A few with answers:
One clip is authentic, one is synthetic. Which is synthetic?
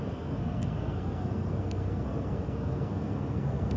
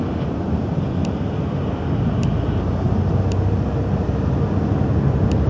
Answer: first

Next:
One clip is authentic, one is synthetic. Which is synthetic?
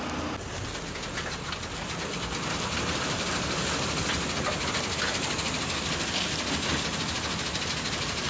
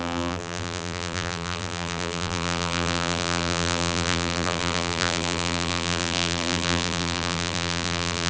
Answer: second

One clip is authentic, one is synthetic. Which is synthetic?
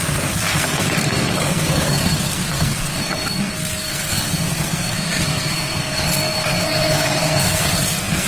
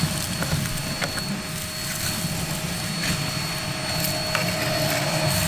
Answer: first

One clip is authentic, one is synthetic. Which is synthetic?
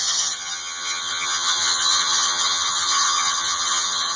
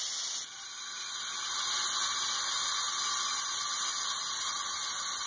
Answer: first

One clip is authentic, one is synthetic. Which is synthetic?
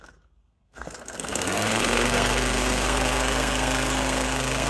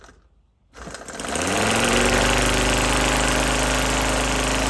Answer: first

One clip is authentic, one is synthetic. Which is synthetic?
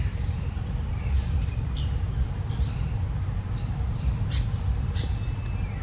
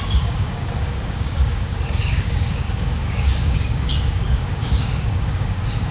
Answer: second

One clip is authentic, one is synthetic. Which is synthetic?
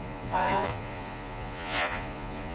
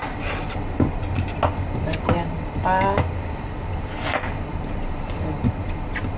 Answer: first